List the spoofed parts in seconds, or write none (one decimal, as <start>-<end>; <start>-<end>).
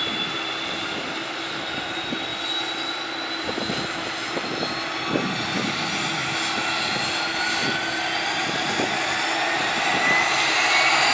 none